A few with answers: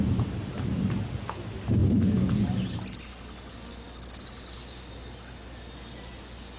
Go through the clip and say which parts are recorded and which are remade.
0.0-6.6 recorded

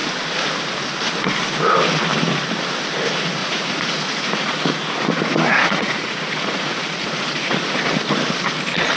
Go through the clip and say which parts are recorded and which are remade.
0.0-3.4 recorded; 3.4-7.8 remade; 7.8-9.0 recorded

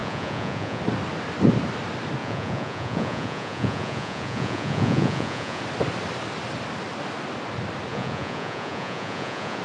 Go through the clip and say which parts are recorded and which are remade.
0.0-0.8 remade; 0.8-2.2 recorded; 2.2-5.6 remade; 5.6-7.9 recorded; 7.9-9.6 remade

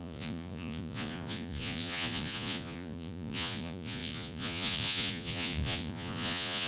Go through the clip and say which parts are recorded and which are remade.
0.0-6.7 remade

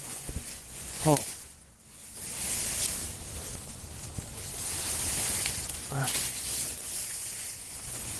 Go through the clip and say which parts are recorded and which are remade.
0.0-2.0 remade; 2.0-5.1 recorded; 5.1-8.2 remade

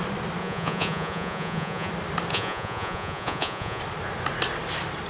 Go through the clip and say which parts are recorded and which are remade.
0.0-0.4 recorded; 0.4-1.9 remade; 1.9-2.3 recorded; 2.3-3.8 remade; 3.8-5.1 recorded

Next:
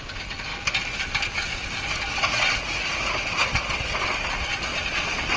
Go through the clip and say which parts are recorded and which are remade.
0.0-2.3 recorded; 2.3-3.0 remade; 3.0-5.4 recorded

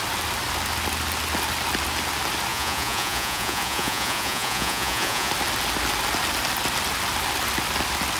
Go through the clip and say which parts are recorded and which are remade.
0.0-2.5 recorded; 2.5-5.3 remade; 5.3-8.2 recorded